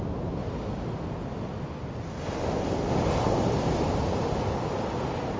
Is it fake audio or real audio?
real